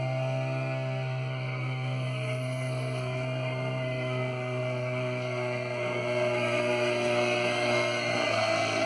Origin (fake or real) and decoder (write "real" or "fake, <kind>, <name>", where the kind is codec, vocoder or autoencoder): fake, codec, SNAC